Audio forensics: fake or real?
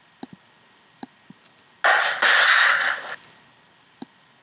real